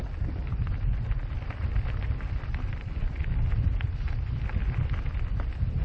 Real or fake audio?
real